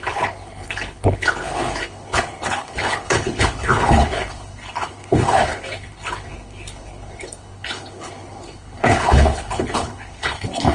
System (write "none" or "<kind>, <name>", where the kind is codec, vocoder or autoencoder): codec, HILCodec